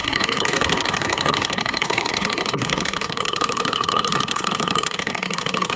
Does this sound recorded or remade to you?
remade